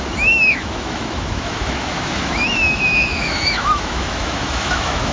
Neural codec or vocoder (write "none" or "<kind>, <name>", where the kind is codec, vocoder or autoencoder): autoencoder, DAC-VAE